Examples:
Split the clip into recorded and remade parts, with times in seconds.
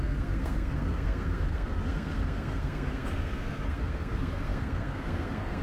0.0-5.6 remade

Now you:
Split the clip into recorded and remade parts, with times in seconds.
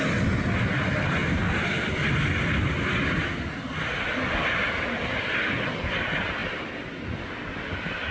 0.0-8.1 recorded